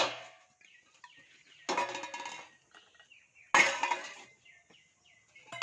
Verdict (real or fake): real